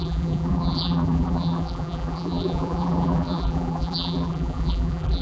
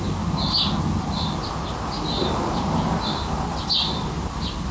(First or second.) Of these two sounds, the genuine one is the second